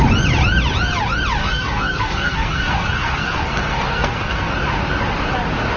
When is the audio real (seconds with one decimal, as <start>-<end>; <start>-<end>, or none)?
0.0-1.4; 4.5-5.8